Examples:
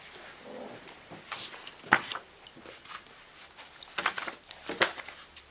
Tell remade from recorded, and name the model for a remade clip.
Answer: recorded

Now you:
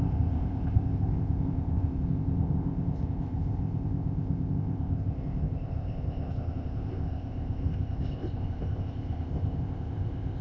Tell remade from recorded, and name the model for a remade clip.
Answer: remade, codec, ZipCodec